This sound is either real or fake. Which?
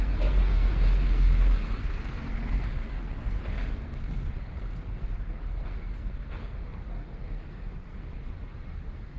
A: fake